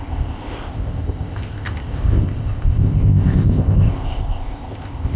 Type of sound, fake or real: fake